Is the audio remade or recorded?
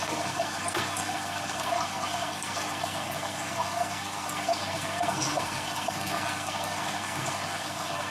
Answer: remade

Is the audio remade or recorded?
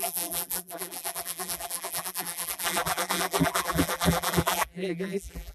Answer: remade